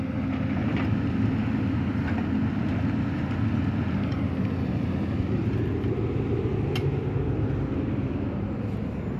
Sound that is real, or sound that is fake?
real